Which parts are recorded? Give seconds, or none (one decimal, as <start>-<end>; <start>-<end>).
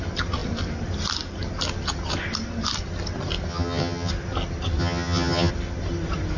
0.0-3.5; 4.1-4.8; 5.5-6.4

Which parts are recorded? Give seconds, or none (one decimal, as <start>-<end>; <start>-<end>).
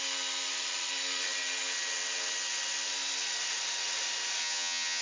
0.0-4.4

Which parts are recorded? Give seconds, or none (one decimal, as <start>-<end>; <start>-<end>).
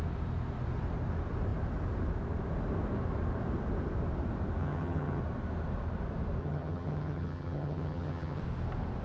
0.0-4.6; 5.2-6.4; 8.4-9.0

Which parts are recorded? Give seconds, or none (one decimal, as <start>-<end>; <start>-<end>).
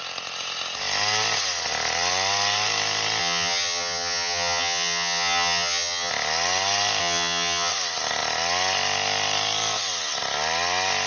0.0-3.2; 6.1-7.0; 7.7-11.1